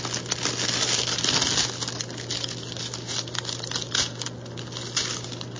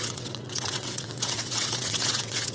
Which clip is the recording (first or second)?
first